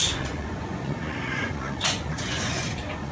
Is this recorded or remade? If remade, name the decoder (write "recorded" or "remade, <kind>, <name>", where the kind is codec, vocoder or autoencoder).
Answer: remade, vocoder, Vocos